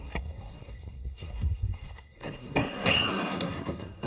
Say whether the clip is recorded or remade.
remade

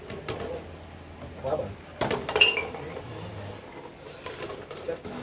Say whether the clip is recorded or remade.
recorded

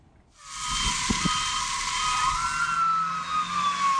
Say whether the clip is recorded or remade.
recorded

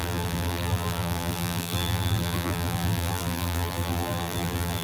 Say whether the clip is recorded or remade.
remade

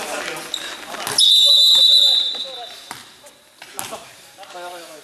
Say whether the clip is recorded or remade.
recorded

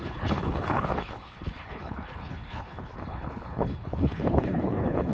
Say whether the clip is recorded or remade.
remade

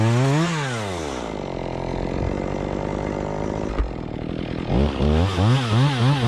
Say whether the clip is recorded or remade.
recorded